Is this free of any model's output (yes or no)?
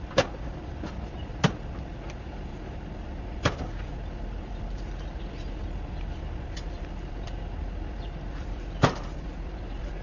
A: no